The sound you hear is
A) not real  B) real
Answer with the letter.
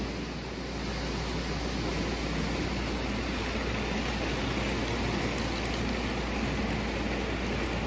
B